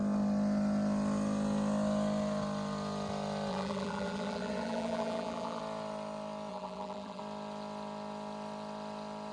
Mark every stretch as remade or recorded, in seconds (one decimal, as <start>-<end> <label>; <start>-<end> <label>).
0.0-3.5 recorded; 3.5-5.6 remade; 5.6-6.5 recorded; 6.5-7.2 remade; 7.2-9.3 recorded